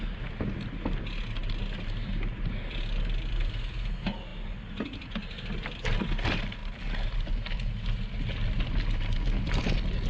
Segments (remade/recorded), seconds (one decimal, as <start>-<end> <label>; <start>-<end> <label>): 0.0-10.1 recorded